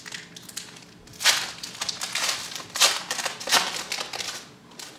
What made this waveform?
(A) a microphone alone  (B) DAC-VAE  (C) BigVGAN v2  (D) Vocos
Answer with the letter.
A